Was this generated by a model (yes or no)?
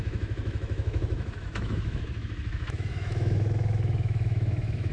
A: yes